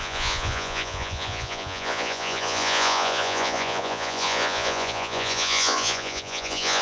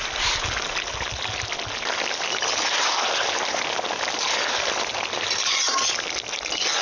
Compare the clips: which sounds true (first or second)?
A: second